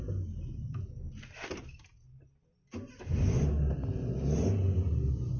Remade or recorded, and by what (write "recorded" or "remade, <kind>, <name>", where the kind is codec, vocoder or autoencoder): recorded